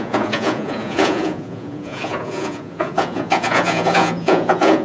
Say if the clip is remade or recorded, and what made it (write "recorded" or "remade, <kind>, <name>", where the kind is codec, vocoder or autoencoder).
remade, vocoder, Vocos